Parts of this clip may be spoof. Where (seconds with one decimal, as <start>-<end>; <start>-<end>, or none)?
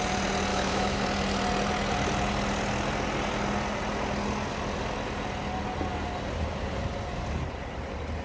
0.5-1.0